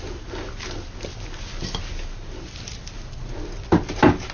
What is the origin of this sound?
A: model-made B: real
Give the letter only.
B